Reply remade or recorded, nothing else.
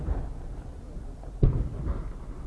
recorded